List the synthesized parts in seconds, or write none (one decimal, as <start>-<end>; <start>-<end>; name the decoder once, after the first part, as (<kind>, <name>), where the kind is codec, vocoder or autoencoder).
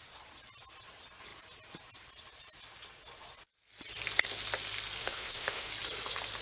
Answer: 5.0-5.7 (autoencoder, DAC-VAE)